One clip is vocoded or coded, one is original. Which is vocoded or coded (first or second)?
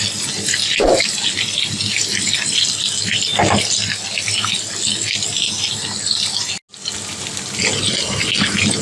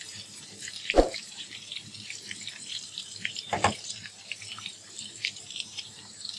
second